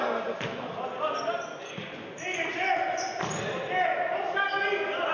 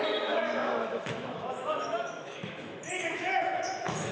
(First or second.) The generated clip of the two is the second